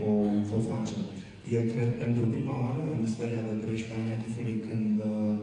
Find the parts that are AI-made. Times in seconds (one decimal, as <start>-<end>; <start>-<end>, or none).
0.0-5.4